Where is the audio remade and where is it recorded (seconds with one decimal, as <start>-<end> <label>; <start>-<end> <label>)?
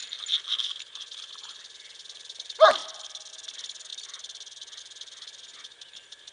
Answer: 0.0-2.8 recorded; 2.8-3.3 remade; 3.3-3.9 recorded; 3.9-4.8 remade; 4.8-6.3 recorded